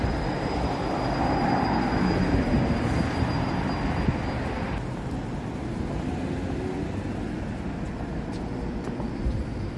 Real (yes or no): yes